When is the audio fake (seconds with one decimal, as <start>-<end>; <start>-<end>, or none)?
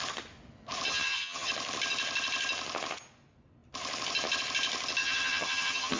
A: 0.9-1.5; 5.0-6.0